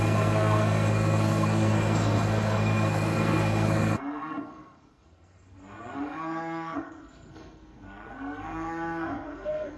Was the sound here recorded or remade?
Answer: remade